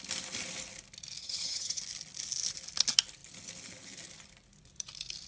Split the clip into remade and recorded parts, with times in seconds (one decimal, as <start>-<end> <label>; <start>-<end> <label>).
0.0-1.2 recorded; 1.2-1.8 remade; 1.8-5.3 recorded